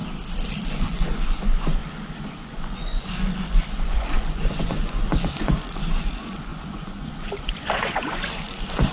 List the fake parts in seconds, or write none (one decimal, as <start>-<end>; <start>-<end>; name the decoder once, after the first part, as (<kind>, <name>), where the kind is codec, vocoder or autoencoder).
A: 0.7-8.9 (vocoder, Vocos)

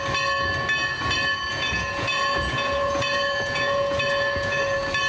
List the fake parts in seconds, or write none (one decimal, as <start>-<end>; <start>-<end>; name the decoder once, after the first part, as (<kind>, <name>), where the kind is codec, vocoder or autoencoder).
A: 1.5-4.6 (vocoder, Vocos)

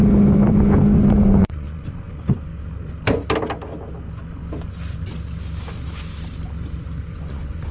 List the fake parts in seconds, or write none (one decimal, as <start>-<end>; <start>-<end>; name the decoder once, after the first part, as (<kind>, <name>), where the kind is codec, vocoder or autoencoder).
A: 1.1-2.5 (vocoder, Vocos); 7.1-7.7

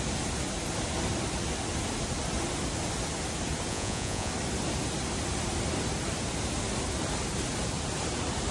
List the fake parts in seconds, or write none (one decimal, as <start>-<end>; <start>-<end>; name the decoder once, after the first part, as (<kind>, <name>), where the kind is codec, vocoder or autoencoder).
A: 3.7-4.3 (vocoder, Vocos)

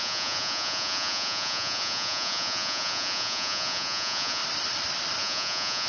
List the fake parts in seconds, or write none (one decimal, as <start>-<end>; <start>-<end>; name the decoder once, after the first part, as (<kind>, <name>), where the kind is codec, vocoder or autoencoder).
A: 0.0-4.4 (vocoder, Vocos); 5.2-5.9

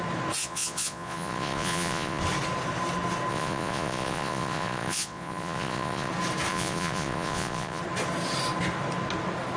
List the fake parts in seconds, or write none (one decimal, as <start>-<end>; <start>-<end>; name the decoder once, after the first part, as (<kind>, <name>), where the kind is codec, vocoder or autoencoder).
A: 0.4-2.2 (vocoder, Vocos); 3.3-6.1; 6.5-7.8

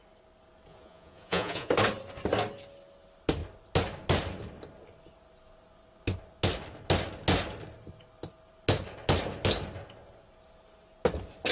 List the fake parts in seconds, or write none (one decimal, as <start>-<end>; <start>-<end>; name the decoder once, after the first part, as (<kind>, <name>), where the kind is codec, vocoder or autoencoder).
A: 0.7-1.7 (vocoder, Vocos)